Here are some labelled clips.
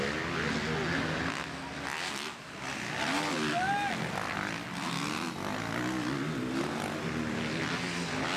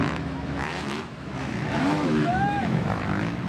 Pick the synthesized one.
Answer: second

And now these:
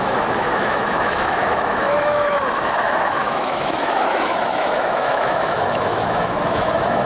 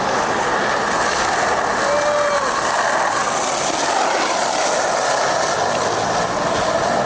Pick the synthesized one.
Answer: first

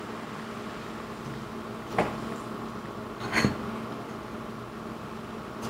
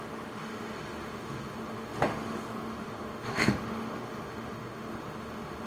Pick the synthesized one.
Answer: second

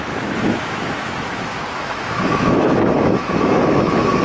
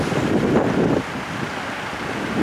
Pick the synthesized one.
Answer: first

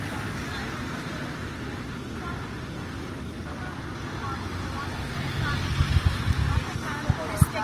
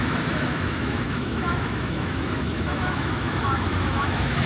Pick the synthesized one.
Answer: second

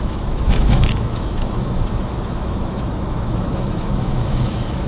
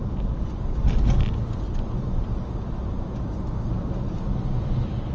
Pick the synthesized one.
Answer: first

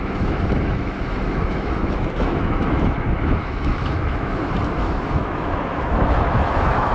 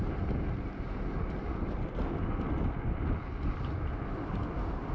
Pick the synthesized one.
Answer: first